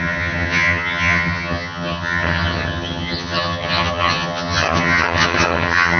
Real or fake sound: fake